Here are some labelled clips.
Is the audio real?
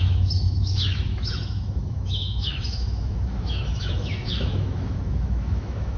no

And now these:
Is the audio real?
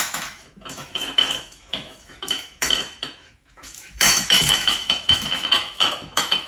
no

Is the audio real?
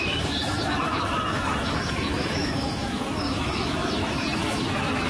no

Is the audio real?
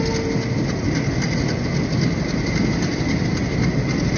yes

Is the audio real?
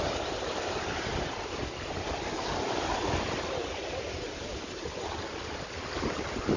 yes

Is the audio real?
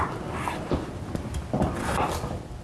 yes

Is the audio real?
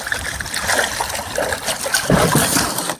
yes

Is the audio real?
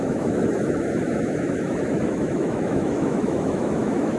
no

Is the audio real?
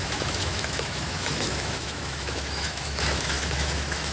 no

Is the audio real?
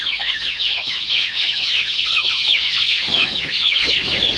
no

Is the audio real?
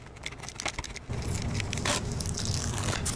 yes